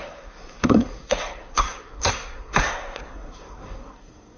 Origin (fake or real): fake